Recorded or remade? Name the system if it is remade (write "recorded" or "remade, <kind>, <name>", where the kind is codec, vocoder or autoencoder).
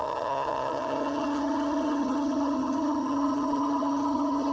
remade, vocoder, HiFi-GAN